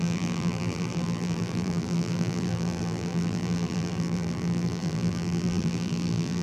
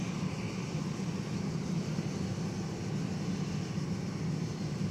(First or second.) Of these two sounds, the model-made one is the first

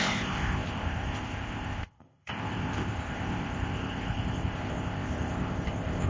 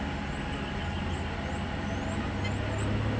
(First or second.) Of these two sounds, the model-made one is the first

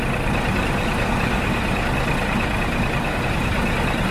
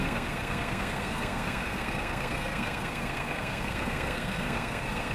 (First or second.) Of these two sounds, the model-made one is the second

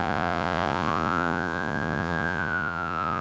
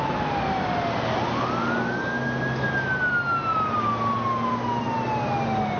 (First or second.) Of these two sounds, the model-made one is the first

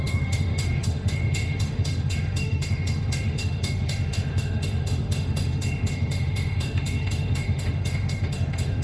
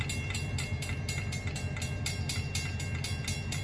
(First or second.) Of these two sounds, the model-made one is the first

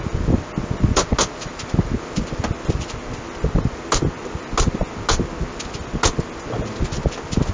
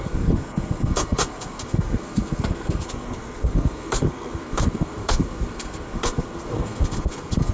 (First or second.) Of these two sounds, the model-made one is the second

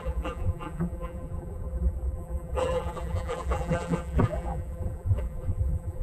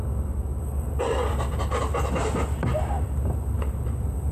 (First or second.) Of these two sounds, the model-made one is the first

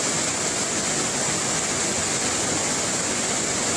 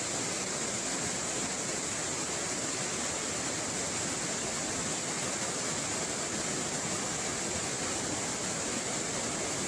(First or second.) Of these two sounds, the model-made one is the first